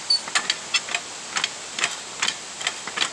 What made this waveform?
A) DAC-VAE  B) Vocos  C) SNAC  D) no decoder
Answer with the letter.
D